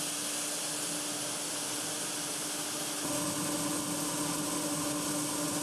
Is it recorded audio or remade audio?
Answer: recorded